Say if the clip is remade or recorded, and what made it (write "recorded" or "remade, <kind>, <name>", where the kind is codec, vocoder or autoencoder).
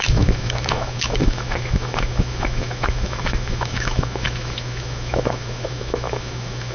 remade, autoencoder, DAC-VAE